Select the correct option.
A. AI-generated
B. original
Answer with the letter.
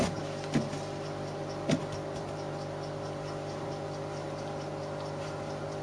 B